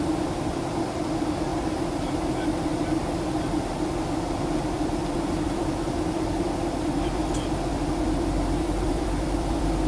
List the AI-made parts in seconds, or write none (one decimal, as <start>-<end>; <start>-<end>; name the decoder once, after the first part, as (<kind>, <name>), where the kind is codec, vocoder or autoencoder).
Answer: 0.0-9.9 (vocoder, BigVGAN v2)